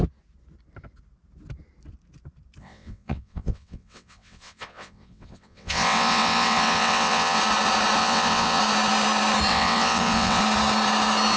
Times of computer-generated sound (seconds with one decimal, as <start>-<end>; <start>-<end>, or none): 2.6-7.4; 8.0-8.6; 9.5-10.4